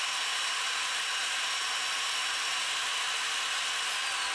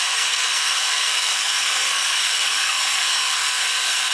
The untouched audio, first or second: first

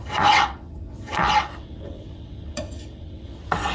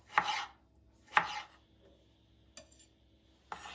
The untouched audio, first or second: second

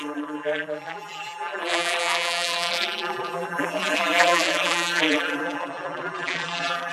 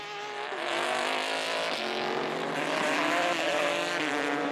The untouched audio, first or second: second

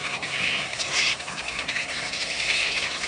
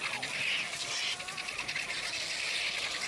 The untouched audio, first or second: second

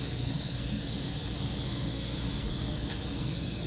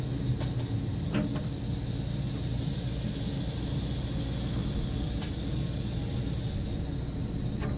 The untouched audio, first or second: second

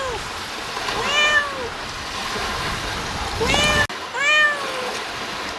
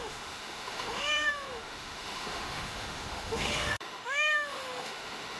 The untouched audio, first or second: first